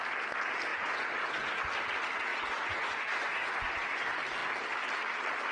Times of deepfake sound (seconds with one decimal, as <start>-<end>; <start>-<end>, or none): 0.7-1.5; 2.3-4.0